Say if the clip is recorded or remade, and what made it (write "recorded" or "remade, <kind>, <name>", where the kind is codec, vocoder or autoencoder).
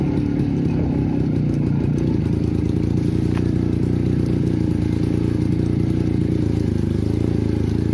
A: recorded